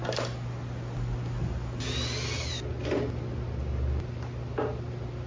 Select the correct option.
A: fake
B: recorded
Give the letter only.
B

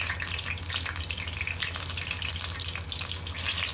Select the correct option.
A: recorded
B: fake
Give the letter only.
A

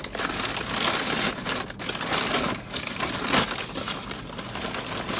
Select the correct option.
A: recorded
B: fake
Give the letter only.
A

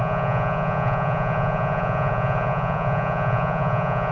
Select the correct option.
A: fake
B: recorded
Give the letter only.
A